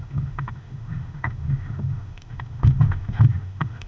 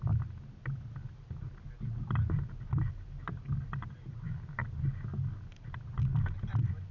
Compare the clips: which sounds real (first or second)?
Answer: second